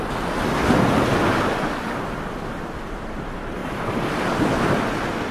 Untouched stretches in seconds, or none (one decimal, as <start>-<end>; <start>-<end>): 0.0-3.6; 4.3-5.3